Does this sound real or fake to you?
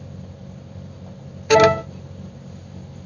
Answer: real